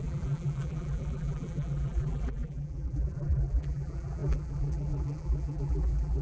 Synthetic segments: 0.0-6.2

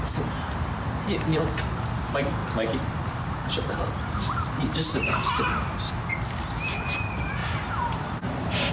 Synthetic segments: 2.4-5.9; 7.4-8.7

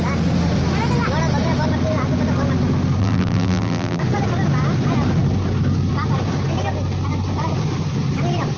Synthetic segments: 3.0-4.0

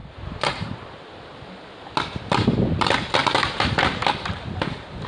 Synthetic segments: 0.0-1.0; 3.2-3.8

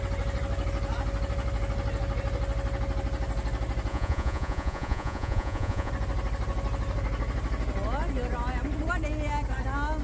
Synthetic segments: 3.9-5.9

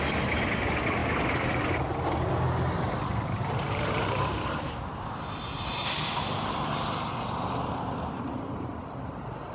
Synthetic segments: 3.1-6.1